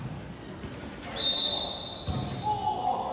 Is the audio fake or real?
real